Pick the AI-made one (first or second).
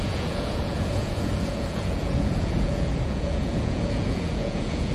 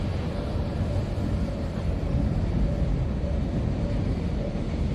first